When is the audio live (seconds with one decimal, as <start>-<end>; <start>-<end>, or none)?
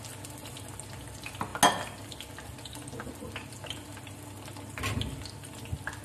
0.0-6.0